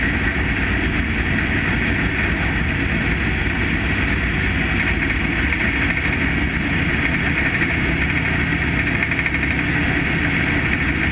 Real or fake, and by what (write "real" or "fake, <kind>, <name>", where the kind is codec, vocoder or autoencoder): real